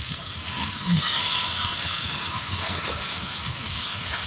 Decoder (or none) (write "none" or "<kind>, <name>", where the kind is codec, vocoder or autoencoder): codec, SNAC